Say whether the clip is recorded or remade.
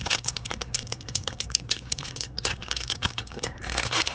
remade